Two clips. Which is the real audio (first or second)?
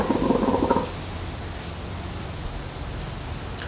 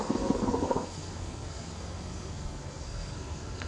first